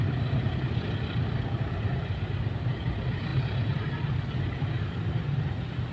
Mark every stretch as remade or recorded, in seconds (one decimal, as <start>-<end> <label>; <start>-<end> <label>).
0.0-5.9 recorded